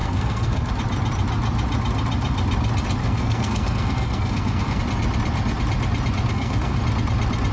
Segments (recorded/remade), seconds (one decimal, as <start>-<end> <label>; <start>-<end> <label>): 0.0-0.7 remade; 0.7-3.0 recorded; 3.0-4.8 remade; 4.8-6.3 recorded; 6.3-6.8 remade; 6.8-7.5 recorded